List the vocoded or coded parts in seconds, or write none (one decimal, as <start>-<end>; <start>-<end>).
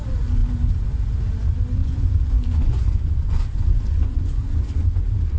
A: 1.8-5.0